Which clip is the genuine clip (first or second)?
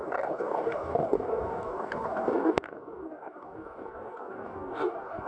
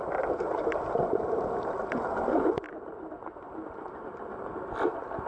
second